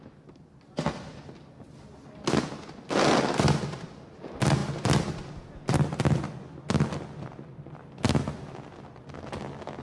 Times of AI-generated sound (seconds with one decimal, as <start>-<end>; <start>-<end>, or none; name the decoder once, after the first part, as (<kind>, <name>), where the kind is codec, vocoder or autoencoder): none